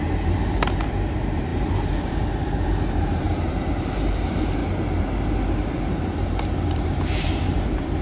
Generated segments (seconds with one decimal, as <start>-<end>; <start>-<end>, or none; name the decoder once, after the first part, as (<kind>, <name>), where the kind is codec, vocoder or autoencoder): 0.0-4.6 (vocoder, BigVGAN v2); 5.8-8.0